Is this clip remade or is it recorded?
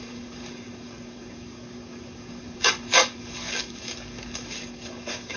remade